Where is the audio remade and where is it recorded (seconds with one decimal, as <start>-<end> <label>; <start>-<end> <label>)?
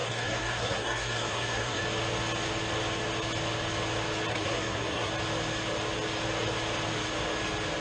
0.0-1.8 remade; 1.8-4.3 recorded; 4.3-5.1 remade; 5.1-7.8 recorded